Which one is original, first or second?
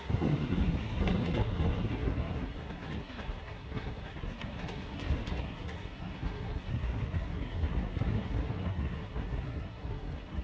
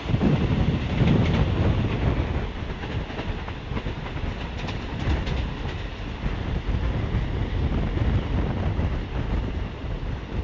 second